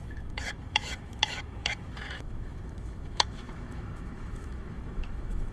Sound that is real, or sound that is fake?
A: fake